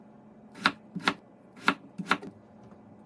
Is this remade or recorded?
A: recorded